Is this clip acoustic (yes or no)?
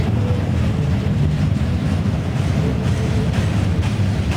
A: no